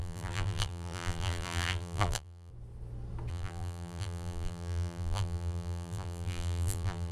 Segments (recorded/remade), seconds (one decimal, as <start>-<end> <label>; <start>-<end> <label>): 0.0-2.5 remade; 2.5-3.3 recorded; 3.3-7.1 remade